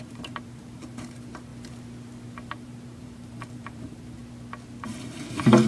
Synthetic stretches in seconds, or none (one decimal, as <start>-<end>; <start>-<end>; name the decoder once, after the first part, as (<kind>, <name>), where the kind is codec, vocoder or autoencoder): 0.0-1.5 (vocoder, BigVGAN v2); 2.5-4.2; 4.9-5.7